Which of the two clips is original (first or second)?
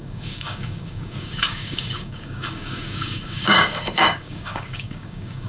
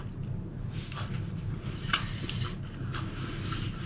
second